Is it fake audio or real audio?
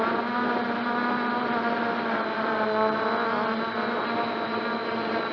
real